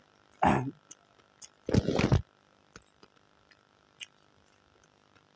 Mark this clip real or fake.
real